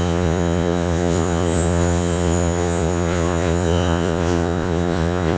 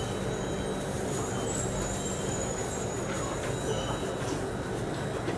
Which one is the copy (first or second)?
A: first